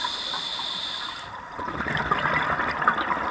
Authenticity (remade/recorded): recorded